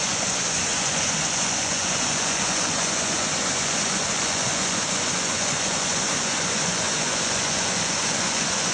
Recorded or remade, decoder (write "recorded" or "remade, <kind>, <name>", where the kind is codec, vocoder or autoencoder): remade, vocoder, Vocos